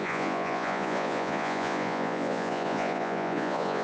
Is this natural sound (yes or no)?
no